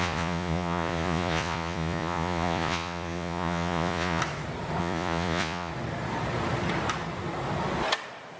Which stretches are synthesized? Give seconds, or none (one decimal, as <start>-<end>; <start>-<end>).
0.0-4.2; 4.8-5.7